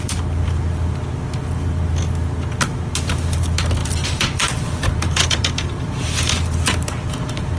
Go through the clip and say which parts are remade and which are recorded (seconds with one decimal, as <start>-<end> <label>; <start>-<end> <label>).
0.0-3.8 recorded; 3.8-6.3 remade; 6.3-7.6 recorded